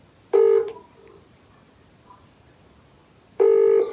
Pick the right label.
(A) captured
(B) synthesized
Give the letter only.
A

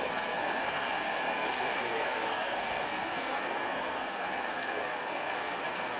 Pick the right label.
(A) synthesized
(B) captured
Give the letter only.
A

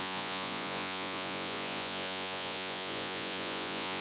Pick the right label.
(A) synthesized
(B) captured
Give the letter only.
A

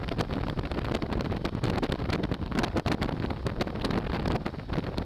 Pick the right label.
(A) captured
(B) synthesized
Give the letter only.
A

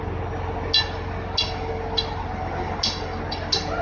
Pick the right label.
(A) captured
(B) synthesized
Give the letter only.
A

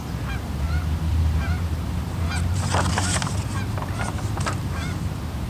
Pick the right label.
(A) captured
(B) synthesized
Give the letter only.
B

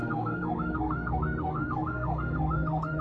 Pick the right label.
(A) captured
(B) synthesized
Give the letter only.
B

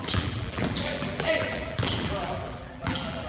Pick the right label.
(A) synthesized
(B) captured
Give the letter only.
A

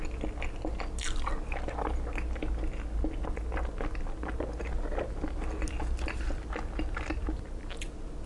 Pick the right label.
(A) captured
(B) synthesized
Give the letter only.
A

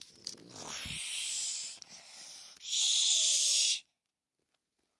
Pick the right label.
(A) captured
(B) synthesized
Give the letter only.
A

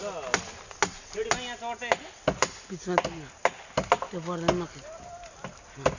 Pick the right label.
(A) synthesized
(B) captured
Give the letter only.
B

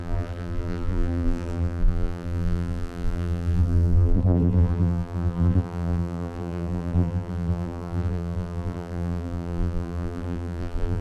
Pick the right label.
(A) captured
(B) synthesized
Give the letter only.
B